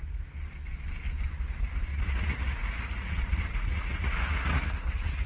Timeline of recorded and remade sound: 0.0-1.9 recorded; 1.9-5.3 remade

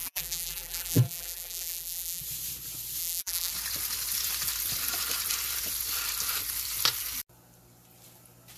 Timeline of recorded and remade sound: 0.0-2.2 remade; 2.2-3.0 recorded; 3.0-3.5 remade; 3.5-8.6 recorded

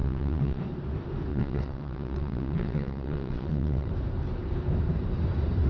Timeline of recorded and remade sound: 0.0-0.6 remade; 0.6-1.3 recorded; 1.3-3.9 remade; 3.9-5.7 recorded